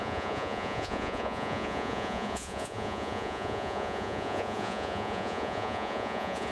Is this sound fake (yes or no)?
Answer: yes